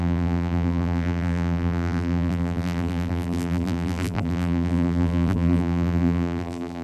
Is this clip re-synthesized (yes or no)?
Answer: yes